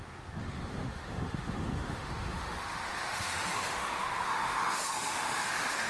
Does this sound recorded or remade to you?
remade